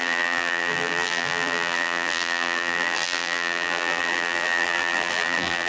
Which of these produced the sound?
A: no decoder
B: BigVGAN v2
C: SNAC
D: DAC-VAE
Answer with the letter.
B